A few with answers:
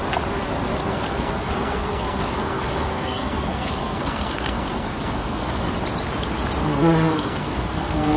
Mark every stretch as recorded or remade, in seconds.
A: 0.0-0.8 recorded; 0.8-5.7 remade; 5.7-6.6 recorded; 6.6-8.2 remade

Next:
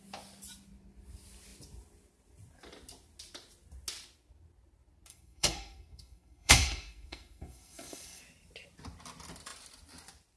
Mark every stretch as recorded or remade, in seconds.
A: 0.0-5.1 recorded; 5.1-8.2 remade; 8.2-10.4 recorded

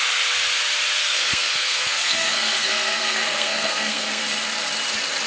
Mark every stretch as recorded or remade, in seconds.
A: 0.0-1.0 recorded; 1.0-4.2 remade; 4.2-5.3 recorded

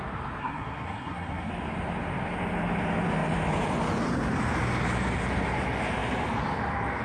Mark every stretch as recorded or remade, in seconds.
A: 0.0-0.4 recorded; 0.4-1.5 remade; 1.5-7.0 recorded

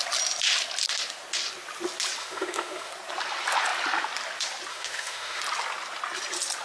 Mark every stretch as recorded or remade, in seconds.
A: 0.0-2.2 recorded; 2.2-2.9 remade; 2.9-4.7 recorded; 4.7-5.4 remade; 5.4-6.6 recorded

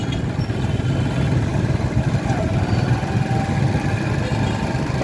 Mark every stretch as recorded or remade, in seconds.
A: 0.0-5.0 recorded